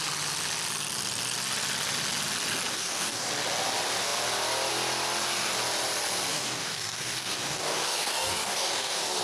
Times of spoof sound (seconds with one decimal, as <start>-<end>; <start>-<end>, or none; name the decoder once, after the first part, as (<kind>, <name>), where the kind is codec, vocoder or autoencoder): 2.7-3.3 (codec, DAC); 6.3-9.2